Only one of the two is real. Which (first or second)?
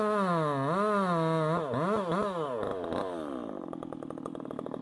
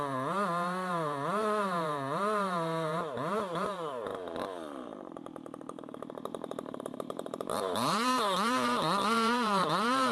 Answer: first